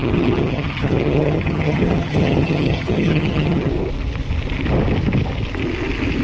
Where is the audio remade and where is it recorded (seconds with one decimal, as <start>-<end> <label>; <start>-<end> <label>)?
0.0-3.7 remade; 3.7-6.2 recorded

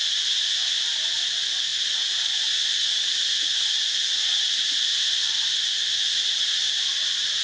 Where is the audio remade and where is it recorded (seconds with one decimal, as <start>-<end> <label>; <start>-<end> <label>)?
0.0-7.4 recorded

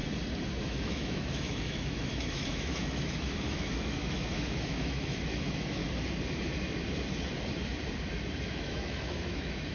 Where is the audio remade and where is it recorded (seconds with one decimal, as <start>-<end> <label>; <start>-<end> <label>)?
0.0-0.6 recorded; 0.6-5.8 remade; 5.8-8.4 recorded; 8.4-9.7 remade

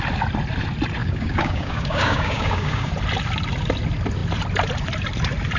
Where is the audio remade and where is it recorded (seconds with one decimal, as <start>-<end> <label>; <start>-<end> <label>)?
0.0-1.0 recorded; 1.0-2.9 remade; 2.9-5.6 recorded

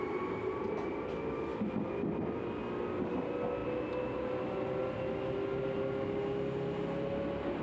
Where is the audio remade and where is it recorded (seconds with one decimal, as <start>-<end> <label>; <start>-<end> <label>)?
0.0-7.6 recorded